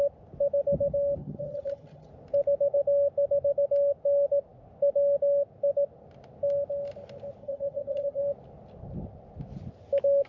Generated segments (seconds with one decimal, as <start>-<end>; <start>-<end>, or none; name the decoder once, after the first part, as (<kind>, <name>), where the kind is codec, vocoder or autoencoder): 1.2-2.1 (vocoder, HiFi-GAN); 7.4-8.2